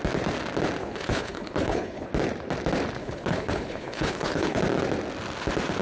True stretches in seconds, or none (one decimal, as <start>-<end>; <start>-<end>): 0.0-0.8; 2.1-3.0; 4.6-5.8